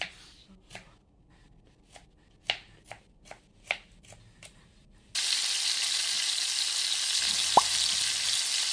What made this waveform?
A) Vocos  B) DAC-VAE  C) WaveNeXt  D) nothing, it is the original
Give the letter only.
D